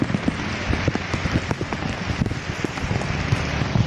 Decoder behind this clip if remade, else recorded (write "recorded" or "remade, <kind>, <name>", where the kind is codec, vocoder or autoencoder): recorded